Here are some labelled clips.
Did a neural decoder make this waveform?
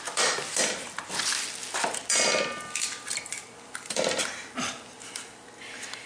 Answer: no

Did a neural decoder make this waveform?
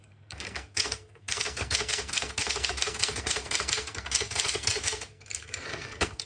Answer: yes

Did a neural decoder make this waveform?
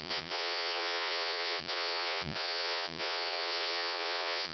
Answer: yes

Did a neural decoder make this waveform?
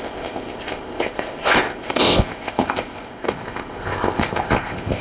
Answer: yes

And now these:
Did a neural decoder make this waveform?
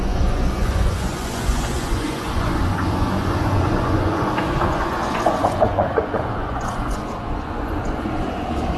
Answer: yes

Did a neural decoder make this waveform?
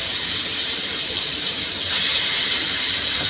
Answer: yes